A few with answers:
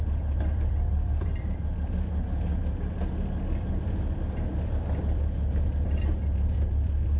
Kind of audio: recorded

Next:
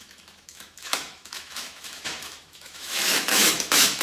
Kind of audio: remade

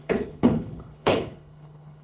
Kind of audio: remade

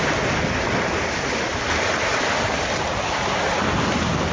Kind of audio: recorded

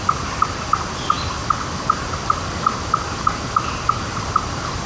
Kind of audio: remade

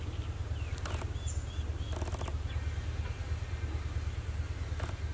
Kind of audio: recorded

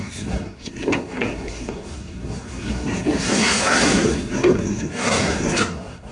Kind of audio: remade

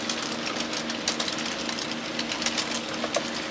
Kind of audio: recorded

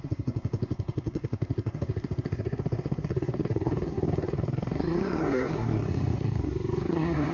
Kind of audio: remade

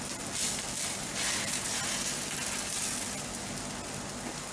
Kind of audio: recorded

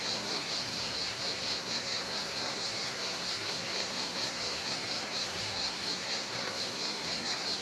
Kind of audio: remade